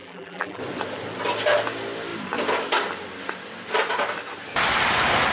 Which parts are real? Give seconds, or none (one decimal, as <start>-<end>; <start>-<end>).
0.6-5.3